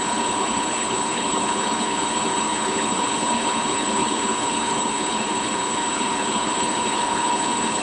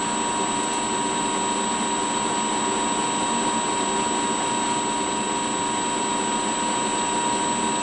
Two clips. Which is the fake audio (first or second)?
first